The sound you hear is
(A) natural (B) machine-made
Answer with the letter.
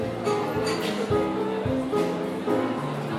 A